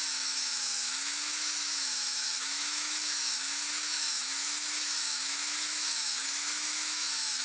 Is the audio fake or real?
fake